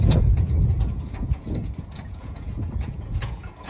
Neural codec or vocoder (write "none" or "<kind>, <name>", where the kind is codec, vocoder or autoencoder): vocoder, Vocos